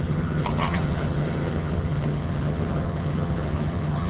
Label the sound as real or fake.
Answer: fake